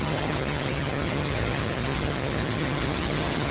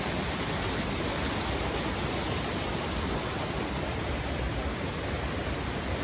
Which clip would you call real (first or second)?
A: second